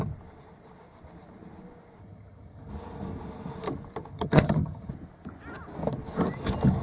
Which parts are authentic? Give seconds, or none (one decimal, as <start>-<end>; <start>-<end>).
0.0-2.0; 2.7-4.1; 4.9-6.8